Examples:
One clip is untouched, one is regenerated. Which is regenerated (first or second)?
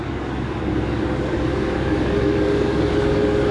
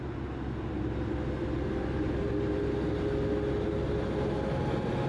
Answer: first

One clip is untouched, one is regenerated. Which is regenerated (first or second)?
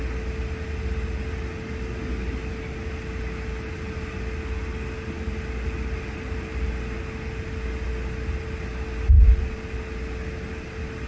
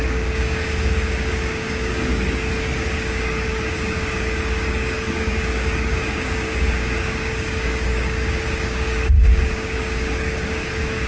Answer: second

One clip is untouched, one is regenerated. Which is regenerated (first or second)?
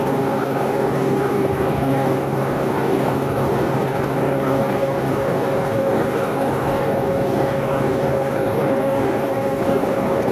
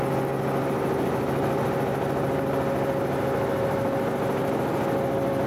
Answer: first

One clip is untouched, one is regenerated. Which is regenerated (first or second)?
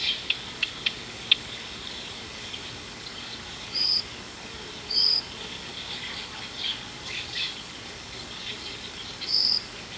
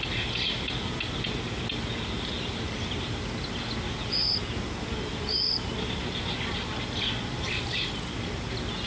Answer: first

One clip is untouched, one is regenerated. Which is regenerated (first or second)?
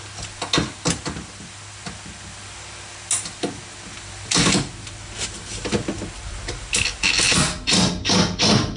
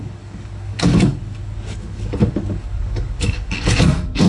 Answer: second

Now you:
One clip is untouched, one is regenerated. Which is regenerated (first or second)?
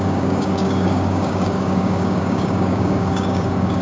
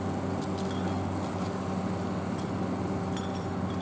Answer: first